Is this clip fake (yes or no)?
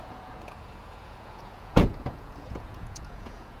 yes